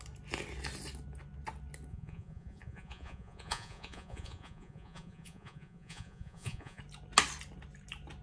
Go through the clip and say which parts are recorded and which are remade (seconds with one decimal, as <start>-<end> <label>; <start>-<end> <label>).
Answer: 0.0-1.9 recorded; 1.9-6.8 remade; 6.8-8.2 recorded